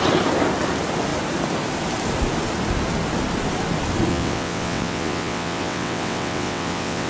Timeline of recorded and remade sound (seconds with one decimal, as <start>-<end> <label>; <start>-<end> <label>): 0.0-4.1 recorded; 4.1-7.1 remade